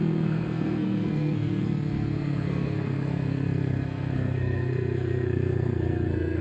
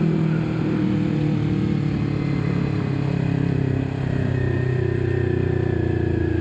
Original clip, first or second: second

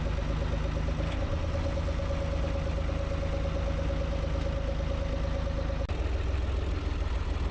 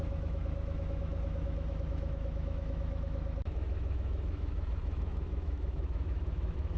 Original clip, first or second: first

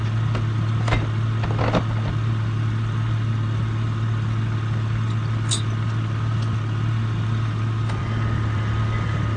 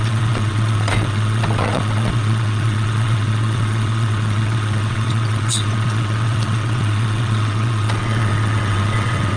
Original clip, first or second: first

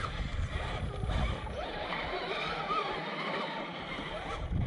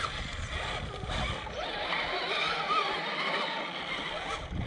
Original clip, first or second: second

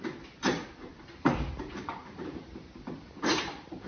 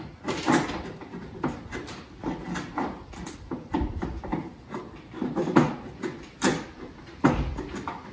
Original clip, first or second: second